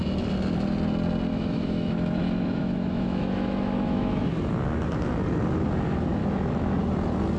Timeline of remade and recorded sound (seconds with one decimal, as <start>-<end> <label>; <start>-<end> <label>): 0.0-1.3 recorded; 1.3-4.3 remade; 4.3-6.2 recorded; 6.2-6.8 remade; 6.8-7.4 recorded